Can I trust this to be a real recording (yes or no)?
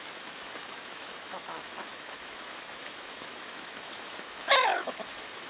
no